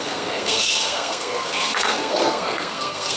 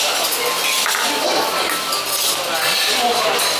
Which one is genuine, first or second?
second